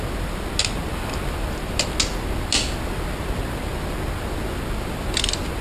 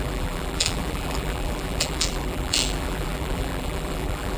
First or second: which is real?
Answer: first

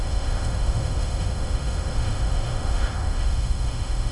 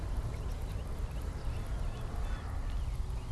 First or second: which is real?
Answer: second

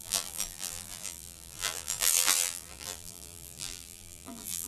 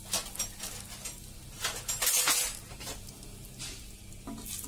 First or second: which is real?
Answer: second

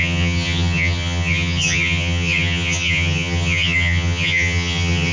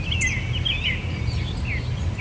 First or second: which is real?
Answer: second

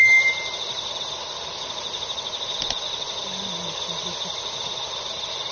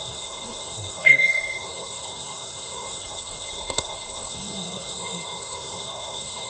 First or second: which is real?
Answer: first